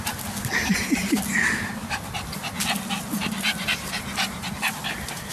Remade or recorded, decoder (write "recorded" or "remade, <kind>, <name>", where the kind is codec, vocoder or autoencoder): recorded